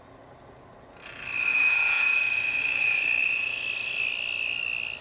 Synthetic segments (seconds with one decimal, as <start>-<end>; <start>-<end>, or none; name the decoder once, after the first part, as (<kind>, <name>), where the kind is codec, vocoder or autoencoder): 1.5-2.2 (vocoder, Vocos)